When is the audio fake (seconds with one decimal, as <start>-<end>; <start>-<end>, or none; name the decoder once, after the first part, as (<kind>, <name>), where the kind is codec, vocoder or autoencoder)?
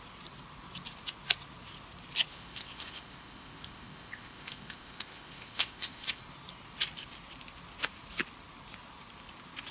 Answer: 2.3-6.2 (codec, ZipCodec)